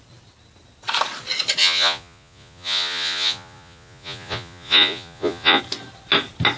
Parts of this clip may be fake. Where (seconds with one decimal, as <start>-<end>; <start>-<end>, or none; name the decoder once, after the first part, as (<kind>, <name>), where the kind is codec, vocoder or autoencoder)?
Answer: 1.6-5.6 (vocoder, Vocos)